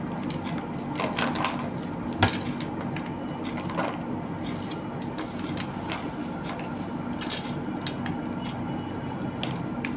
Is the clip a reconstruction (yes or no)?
no